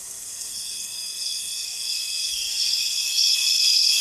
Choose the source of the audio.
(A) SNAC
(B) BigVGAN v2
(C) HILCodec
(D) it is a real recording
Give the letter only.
A